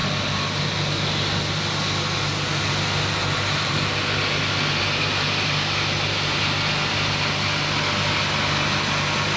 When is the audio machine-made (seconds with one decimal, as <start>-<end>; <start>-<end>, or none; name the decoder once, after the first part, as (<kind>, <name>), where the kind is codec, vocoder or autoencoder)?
none